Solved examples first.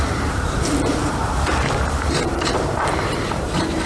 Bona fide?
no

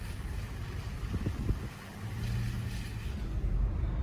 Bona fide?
yes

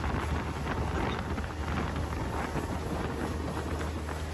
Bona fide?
yes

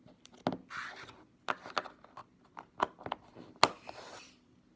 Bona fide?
yes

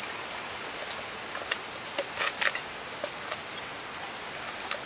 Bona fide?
yes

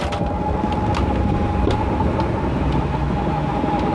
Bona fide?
yes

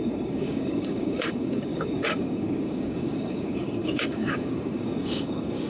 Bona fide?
no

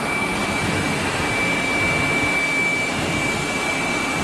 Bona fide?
yes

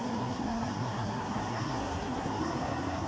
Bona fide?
no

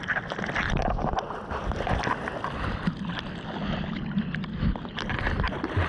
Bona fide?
yes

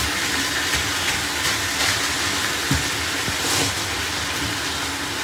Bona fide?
yes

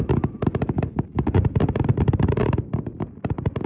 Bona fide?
yes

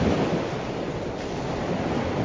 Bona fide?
yes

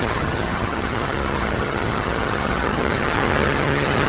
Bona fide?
no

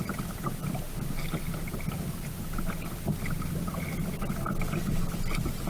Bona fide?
yes